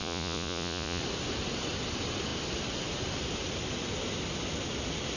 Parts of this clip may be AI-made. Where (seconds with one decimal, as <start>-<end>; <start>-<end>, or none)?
0.0-1.0

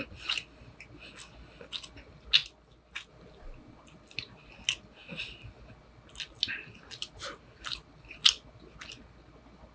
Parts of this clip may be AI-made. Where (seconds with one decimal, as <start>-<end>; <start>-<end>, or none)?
none

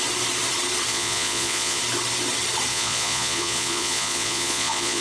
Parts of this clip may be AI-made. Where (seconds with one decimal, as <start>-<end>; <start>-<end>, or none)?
0.9-1.8; 2.7-5.0

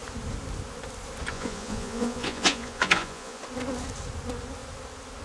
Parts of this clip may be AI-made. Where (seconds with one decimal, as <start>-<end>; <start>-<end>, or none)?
1.3-3.4

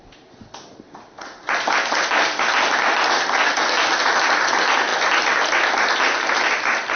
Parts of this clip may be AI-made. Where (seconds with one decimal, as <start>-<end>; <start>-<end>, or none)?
none